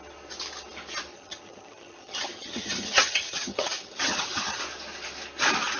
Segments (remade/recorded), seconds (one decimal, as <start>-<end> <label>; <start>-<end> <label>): 0.0-1.1 recorded; 1.1-4.6 remade; 4.6-5.8 recorded